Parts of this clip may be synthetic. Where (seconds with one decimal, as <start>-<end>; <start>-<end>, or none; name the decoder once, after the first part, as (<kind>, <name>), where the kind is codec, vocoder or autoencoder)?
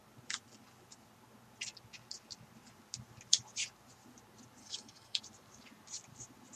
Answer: 4.6-5.2 (codec, DAC)